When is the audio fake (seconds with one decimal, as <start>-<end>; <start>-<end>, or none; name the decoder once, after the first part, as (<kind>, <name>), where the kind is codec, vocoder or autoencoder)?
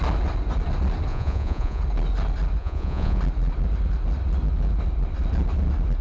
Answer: 1.1-1.8 (vocoder, Vocos); 2.6-3.2